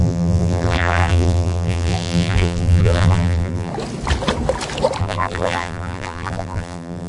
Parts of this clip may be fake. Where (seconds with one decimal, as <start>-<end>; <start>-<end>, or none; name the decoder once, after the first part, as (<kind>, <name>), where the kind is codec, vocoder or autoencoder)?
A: 0.0-3.7 (vocoder, BigVGAN v2); 5.0-7.1